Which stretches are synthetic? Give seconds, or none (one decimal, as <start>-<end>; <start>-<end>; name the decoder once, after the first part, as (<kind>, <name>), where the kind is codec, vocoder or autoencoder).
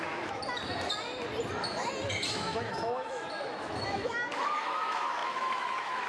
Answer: 0.0-0.4 (autoencoder, DAC-VAE); 2.3-6.1